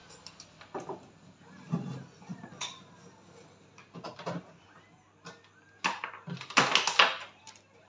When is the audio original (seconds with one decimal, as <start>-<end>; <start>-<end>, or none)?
0.0-7.9